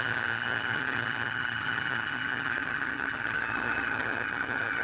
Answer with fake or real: fake